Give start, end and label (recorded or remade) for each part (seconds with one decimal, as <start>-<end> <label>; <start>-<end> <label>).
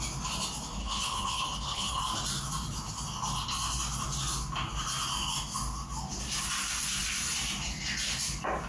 0.0-0.8 recorded; 0.8-2.0 remade; 2.0-8.7 recorded